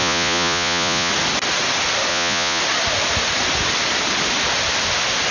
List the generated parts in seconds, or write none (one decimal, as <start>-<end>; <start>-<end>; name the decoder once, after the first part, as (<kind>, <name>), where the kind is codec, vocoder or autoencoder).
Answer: 0.0-1.1 (vocoder, Vocos); 2.1-2.6